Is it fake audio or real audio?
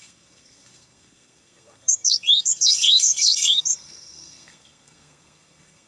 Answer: fake